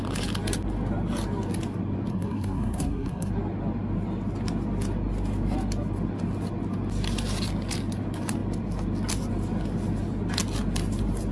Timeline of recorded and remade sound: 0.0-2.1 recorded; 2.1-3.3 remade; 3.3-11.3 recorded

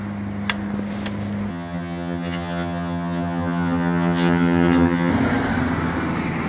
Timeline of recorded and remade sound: 0.0-1.5 recorded; 1.5-5.1 remade; 5.1-6.5 recorded

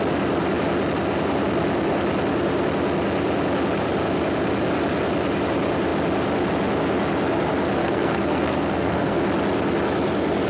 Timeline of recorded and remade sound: 0.0-7.8 recorded; 7.8-9.2 remade; 9.2-10.5 recorded

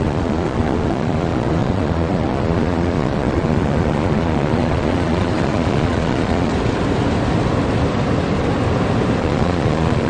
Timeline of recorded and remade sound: 0.0-6.5 remade; 6.5-9.2 recorded; 9.2-10.1 remade

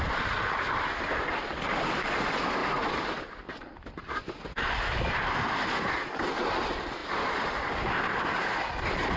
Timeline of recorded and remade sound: 0.0-9.2 recorded

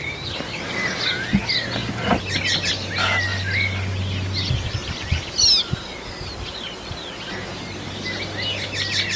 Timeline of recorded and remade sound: 0.0-4.8 recorded; 4.8-5.4 remade; 5.4-9.2 recorded

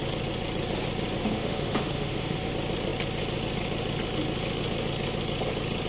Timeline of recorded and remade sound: 0.0-1.2 recorded; 1.2-2.5 remade; 2.5-5.9 recorded

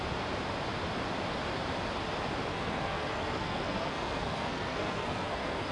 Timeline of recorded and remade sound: 0.0-2.5 recorded; 2.5-5.7 remade